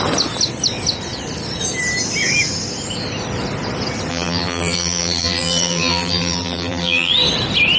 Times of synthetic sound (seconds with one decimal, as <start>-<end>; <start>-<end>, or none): 4.1-7.1